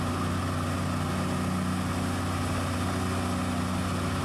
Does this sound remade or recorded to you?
recorded